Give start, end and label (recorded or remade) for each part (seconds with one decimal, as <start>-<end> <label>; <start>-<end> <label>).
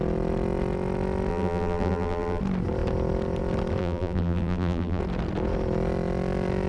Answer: 0.0-1.3 recorded; 1.3-2.4 remade; 2.4-3.8 recorded; 3.8-5.0 remade; 5.0-6.7 recorded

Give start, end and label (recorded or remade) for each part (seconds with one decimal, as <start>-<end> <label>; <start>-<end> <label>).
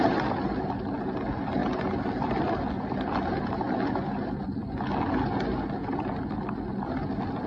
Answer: 0.0-7.5 recorded